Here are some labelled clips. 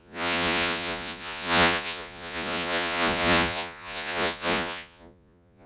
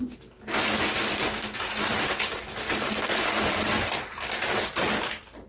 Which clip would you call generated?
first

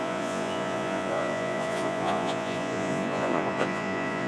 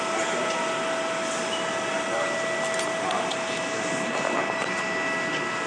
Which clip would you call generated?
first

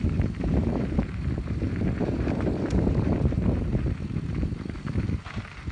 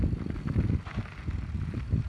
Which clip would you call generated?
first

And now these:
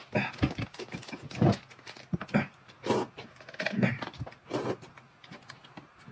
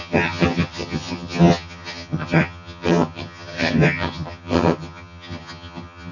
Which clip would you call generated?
second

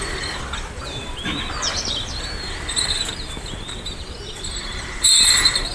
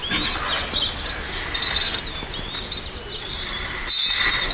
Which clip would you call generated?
first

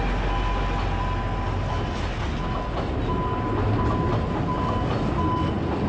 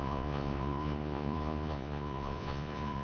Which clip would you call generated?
second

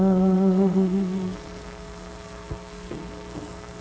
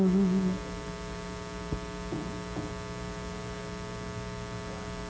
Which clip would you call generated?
first